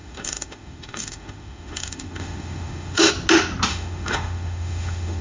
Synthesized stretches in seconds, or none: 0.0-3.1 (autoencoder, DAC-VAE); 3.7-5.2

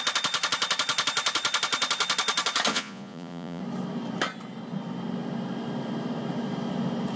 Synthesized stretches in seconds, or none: 2.7-3.6 (vocoder, Vocos)

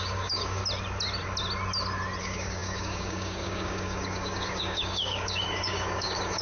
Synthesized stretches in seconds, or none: 0.0-0.6 (codec, DAC); 2.2-6.4

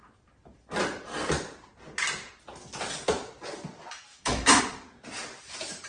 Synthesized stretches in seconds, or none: 4.1-4.6 (autoencoder, DAC-VAE)

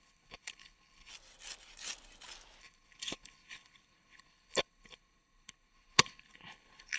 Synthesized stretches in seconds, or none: 0.0-1.1 (codec, HILCodec); 2.6-7.0